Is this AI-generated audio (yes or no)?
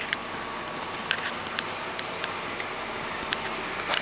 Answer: no